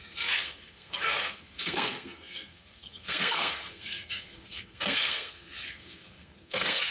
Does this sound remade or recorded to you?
remade